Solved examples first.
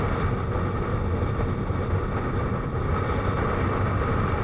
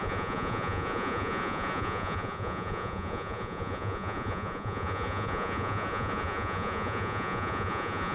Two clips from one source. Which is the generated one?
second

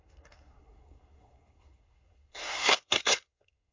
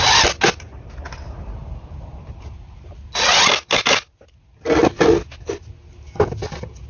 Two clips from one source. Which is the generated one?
first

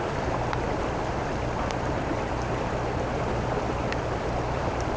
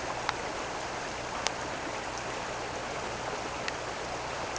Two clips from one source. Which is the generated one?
first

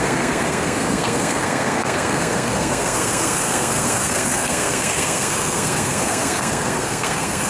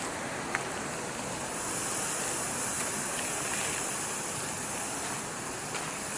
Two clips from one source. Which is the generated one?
first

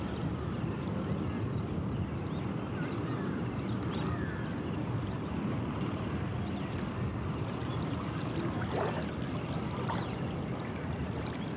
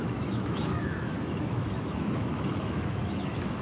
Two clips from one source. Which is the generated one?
second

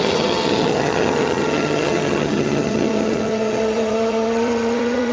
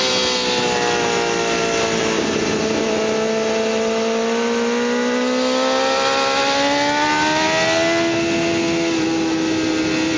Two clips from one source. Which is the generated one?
first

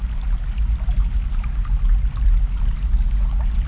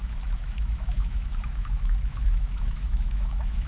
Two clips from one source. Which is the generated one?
second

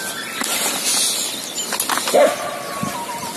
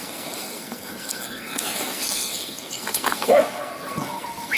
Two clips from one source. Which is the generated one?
second